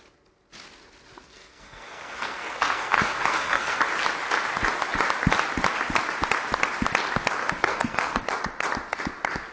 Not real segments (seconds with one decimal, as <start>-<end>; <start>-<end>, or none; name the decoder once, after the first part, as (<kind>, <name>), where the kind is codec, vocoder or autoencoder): 1.2-3.8 (codec, SNAC); 7.4-8.2